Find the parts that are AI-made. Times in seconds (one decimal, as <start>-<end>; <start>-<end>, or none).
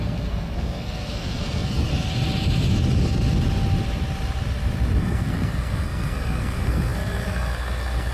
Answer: 0.0-1.9; 5.0-8.1